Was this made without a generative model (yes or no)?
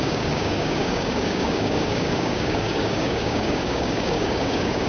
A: no